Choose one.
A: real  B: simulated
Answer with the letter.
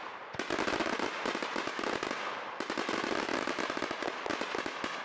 A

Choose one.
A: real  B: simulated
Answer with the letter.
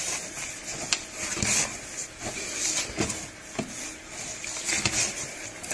A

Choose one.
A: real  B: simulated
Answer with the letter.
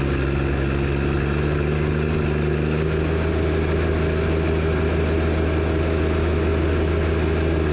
A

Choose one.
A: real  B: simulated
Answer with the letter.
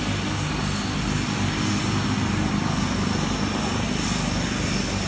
A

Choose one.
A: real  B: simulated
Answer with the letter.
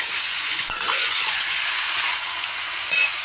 B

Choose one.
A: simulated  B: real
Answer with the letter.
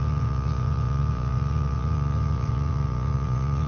A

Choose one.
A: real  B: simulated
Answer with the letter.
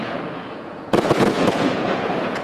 B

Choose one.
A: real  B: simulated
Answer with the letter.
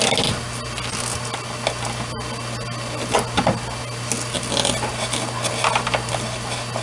A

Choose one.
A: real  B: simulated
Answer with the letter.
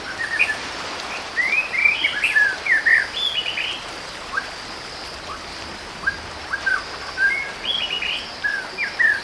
A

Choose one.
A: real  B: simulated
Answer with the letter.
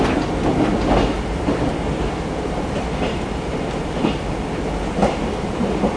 A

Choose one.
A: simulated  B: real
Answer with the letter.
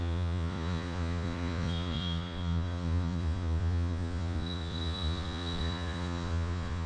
A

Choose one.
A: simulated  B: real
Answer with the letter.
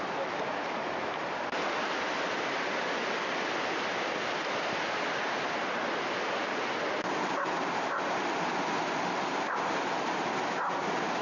B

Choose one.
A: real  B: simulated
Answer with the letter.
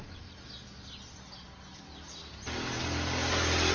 A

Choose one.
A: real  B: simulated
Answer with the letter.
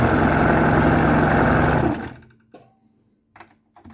A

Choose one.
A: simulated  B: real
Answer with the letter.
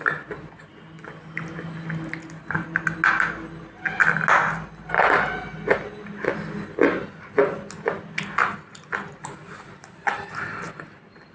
B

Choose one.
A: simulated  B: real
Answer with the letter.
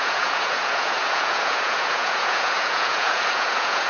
A